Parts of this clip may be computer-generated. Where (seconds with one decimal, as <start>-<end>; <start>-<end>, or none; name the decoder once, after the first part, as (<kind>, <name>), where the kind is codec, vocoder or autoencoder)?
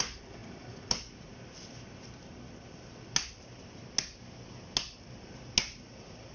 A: none